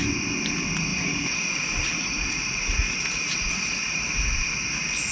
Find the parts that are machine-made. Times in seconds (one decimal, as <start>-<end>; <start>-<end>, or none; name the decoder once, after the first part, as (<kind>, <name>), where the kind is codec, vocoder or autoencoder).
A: 0.9-4.0 (vocoder, Vocos)